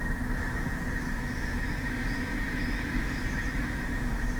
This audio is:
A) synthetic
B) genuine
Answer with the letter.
A